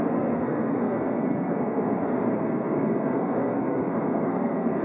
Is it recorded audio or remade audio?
remade